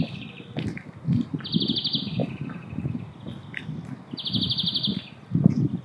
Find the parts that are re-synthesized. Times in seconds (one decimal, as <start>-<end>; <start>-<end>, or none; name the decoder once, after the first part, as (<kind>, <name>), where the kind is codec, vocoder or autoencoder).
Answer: none